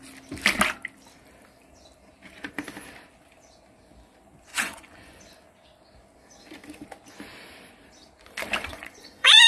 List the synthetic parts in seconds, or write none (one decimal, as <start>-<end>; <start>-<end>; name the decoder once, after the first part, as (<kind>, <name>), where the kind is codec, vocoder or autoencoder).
4.5-5.2 (vocoder, Vocos); 8.7-9.5

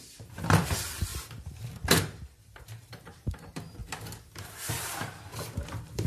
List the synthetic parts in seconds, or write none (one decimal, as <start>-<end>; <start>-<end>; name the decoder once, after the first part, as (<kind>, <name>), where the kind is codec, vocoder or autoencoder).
0.0-3.8 (vocoder, BigVGAN v2); 4.4-6.1

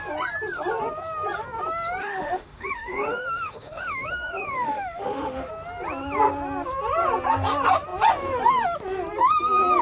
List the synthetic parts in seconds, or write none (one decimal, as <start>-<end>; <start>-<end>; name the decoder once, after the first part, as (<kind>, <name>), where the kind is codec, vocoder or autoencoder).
2.0-5.5 (autoencoder, DAC-VAE)

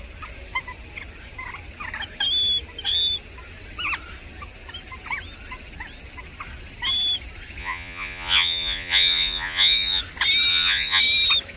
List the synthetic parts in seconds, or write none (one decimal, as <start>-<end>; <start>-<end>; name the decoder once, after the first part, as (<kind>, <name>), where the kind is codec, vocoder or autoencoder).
7.6-10.0 (vocoder, Vocos); 10.5-11.0